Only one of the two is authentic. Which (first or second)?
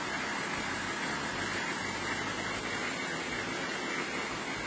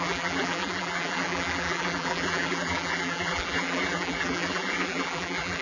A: first